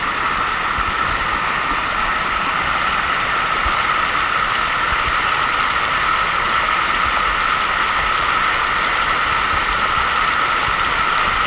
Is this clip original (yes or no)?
yes